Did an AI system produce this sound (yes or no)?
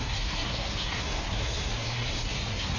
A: yes